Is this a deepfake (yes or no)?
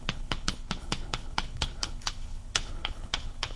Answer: yes